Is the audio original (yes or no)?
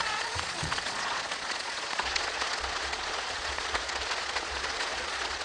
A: no